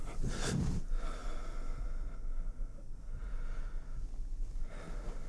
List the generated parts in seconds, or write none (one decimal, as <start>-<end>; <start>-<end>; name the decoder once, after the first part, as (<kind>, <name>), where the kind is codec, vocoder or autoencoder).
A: none